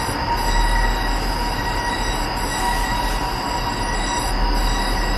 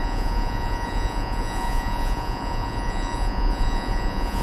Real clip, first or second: first